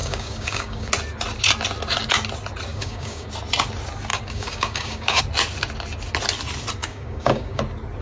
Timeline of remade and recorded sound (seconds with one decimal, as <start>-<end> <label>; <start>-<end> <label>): 0.0-0.9 remade; 0.9-2.7 recorded; 2.7-3.3 remade; 3.3-4.1 recorded; 4.1-5.2 remade; 5.2-6.8 recorded; 6.8-7.6 remade; 7.6-8.0 recorded